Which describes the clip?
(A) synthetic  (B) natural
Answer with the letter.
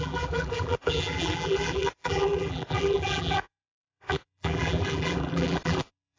A